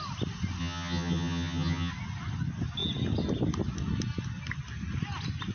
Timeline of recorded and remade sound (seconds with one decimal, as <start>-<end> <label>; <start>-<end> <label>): 0.0-0.6 recorded; 0.6-1.9 remade; 1.9-5.5 recorded